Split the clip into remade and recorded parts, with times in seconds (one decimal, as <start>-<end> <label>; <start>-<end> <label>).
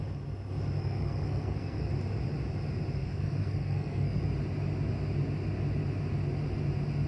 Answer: 0.0-0.8 recorded; 0.8-1.9 remade; 1.9-3.0 recorded; 3.0-4.2 remade; 4.2-7.1 recorded